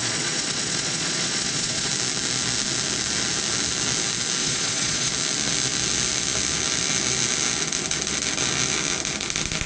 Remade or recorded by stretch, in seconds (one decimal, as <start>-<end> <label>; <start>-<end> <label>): 0.0-1.9 remade; 1.9-4.4 recorded; 4.4-5.1 remade; 5.1-9.7 recorded